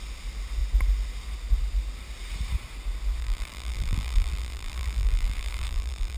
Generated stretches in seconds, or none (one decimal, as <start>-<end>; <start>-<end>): 3.2-6.2